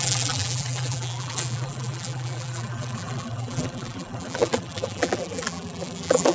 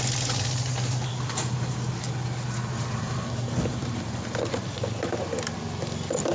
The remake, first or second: first